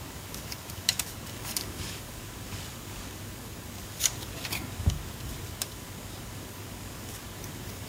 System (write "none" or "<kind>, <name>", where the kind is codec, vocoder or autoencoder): codec, DAC